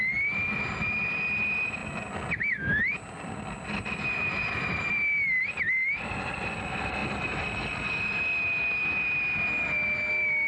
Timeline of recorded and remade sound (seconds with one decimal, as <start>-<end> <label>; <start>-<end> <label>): 0.0-10.5 recorded